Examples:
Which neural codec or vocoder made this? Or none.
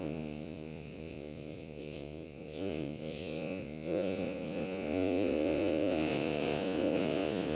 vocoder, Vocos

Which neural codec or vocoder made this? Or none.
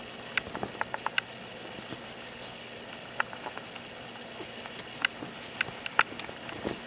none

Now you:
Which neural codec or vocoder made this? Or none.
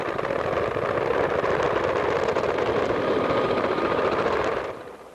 none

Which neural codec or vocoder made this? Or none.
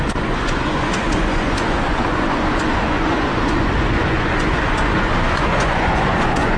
vocoder, Vocos